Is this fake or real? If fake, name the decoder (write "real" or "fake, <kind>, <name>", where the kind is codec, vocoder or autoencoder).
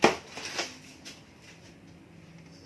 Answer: real